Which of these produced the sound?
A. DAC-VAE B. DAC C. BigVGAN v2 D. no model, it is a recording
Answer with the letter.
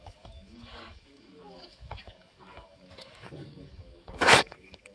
B